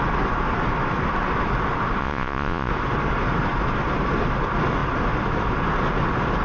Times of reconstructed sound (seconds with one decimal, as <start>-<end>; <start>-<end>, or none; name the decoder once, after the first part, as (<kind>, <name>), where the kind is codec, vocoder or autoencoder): 2.0-2.7 (vocoder, Vocos)